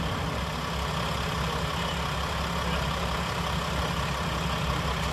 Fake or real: real